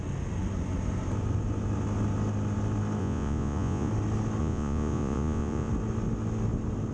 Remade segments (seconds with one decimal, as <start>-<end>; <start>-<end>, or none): 3.0-3.9; 4.4-5.7